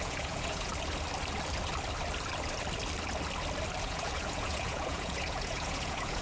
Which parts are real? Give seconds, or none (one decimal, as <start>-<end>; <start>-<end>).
0.7-3.8